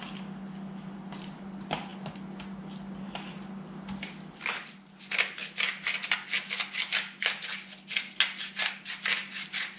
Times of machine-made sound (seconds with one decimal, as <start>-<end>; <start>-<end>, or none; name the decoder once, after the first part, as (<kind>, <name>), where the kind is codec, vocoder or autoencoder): none